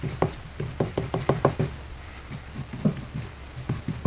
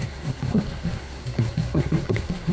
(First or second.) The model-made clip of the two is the second